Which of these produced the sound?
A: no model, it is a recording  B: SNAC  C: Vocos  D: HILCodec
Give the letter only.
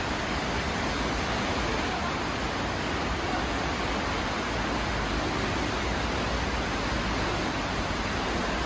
A